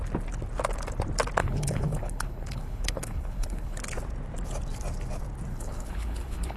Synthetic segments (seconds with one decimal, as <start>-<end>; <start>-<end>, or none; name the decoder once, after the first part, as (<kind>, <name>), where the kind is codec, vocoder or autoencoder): 1.4-3.8 (codec, HILCodec); 5.5-6.6